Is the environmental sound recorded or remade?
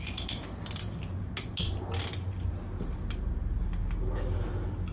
recorded